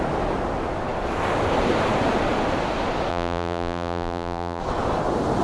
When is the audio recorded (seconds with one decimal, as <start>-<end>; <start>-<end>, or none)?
0.0-3.1; 4.6-5.4